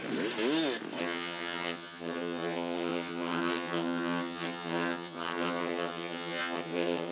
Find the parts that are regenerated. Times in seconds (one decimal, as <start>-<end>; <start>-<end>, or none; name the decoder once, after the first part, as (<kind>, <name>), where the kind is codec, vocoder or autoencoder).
1.0-7.1 (vocoder, HiFi-GAN)